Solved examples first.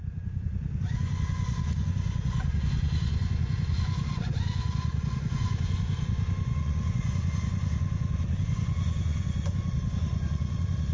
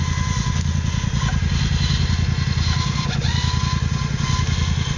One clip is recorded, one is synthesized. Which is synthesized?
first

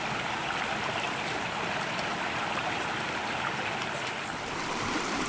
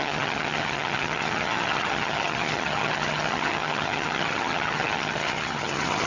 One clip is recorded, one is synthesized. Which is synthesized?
second